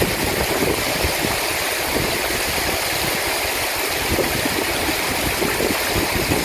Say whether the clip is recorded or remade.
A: recorded